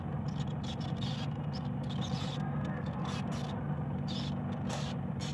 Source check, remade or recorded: recorded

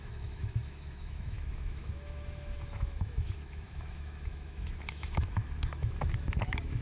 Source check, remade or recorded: remade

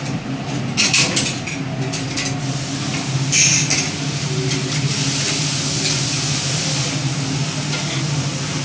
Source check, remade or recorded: recorded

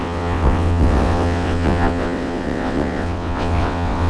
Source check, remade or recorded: remade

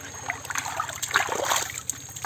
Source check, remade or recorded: recorded